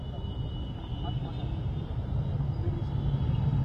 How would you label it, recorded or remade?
recorded